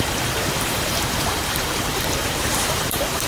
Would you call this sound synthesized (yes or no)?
yes